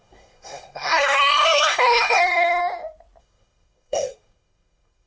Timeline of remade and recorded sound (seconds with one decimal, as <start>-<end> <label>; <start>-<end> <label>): 0.0-2.6 remade; 2.6-3.2 recorded; 3.2-5.1 remade